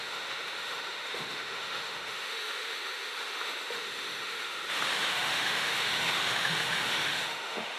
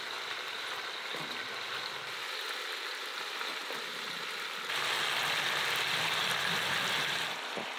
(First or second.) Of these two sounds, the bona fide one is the second